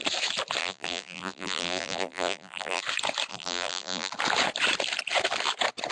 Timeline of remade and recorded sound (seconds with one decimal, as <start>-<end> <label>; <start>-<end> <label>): 0.0-0.6 recorded; 0.6-2.8 remade; 2.8-3.3 recorded; 3.3-4.1 remade; 4.1-5.9 recorded